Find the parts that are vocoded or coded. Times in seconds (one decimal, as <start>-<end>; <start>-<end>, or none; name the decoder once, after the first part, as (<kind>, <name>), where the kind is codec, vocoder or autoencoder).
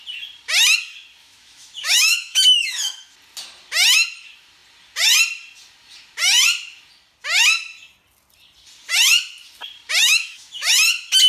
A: 1.2-3.1 (autoencoder, DAC-VAE); 10.0-10.7